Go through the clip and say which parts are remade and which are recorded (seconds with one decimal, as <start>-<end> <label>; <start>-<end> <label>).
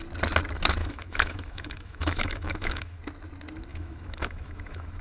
0.0-0.8 recorded; 0.8-3.0 remade; 3.0-3.7 recorded; 3.7-5.0 remade